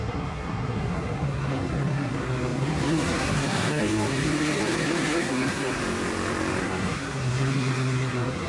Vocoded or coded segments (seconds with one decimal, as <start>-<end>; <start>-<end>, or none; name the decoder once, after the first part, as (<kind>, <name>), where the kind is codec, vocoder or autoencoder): 0.0-5.8 (codec, SNAC); 6.6-8.5